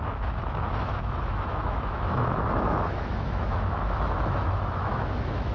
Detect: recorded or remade remade